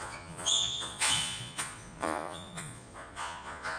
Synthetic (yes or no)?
yes